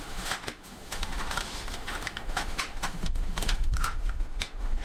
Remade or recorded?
remade